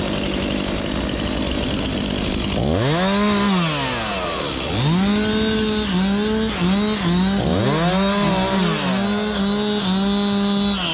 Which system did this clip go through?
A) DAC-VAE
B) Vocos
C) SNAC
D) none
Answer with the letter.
D